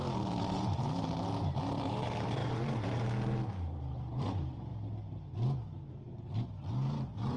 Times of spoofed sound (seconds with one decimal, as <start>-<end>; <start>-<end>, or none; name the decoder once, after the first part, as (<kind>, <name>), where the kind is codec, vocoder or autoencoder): 0.0-4.7 (vocoder, BigVGAN v2); 6.7-7.4